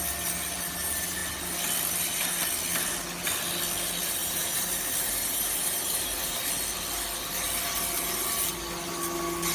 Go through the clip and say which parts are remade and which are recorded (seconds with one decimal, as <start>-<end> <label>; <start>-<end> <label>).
0.0-4.2 recorded; 4.2-6.5 remade; 6.5-9.5 recorded